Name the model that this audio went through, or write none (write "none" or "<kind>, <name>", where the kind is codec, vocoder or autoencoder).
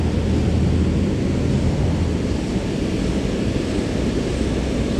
none